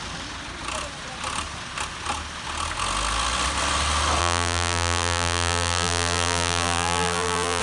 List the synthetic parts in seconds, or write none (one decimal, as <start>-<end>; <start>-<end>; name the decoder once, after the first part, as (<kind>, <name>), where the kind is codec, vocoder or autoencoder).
4.2-7.6 (vocoder, BigVGAN v2)